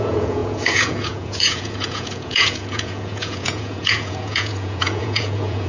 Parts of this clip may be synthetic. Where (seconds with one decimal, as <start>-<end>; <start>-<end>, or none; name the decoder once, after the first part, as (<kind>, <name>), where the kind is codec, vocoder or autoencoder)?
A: 0.0-5.7 (vocoder, Vocos)